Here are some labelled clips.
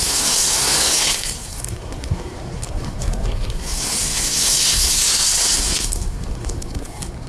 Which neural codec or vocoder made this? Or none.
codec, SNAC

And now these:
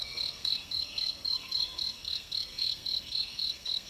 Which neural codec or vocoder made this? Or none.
codec, SNAC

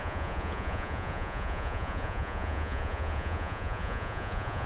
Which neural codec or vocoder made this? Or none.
vocoder, Vocos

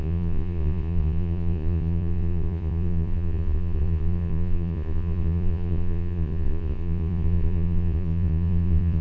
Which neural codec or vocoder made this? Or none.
vocoder, Vocos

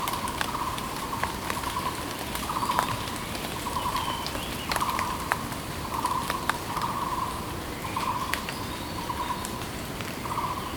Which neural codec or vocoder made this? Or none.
vocoder, BigVGAN v2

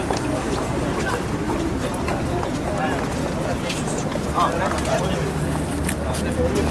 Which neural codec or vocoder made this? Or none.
none